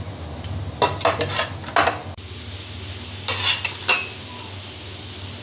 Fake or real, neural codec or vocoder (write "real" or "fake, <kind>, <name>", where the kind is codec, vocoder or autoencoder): real